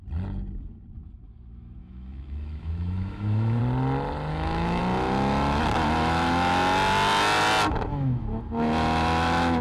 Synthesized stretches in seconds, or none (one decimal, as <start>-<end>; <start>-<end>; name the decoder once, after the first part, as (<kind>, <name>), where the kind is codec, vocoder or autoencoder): 1.8-3.6 (autoencoder, DAC-VAE); 4.3-4.8; 7.9-8.4